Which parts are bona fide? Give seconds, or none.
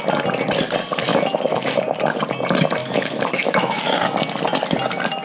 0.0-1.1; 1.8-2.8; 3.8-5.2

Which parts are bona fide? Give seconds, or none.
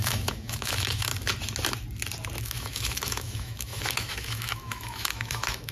1.1-2.4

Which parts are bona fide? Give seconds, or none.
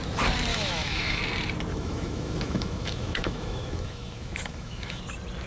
0.0-0.5; 1.2-1.7; 5.0-5.5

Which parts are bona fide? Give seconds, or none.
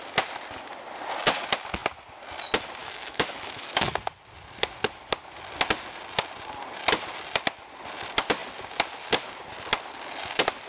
0.0-2.8; 3.9-10.7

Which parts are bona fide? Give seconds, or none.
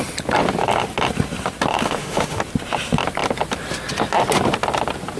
0.0-1.7; 2.4-5.2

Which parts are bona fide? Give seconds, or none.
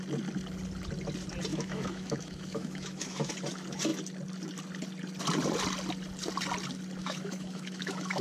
0.0-1.5; 3.3-7.0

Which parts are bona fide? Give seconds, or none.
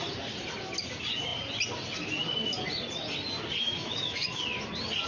0.0-3.6; 4.4-5.1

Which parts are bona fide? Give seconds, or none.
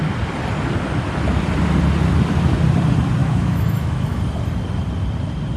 0.0-3.2; 4.2-5.6